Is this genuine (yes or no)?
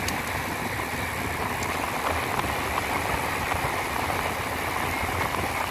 yes